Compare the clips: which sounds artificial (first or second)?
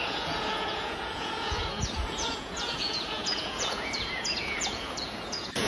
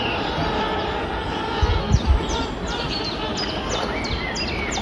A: first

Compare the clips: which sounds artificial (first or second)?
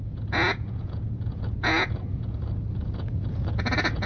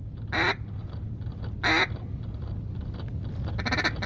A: first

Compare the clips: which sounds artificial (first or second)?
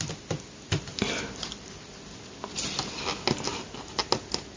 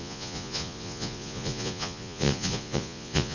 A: second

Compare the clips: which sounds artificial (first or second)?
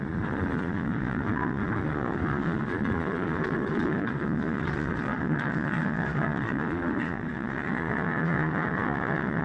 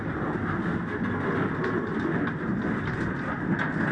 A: first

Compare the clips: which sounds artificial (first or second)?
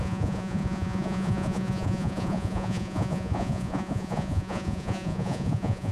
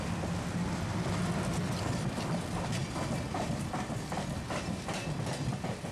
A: first